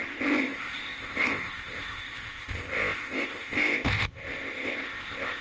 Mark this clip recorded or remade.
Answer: remade